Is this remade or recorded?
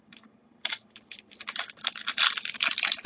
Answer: remade